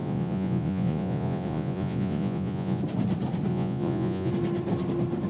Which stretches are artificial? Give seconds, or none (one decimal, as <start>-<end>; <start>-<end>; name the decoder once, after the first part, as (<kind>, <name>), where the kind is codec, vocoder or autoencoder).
0.0-2.8 (vocoder, Vocos); 3.5-4.3